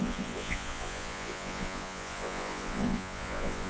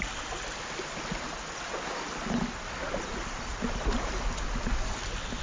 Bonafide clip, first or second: second